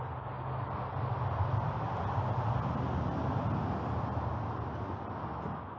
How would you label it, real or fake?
real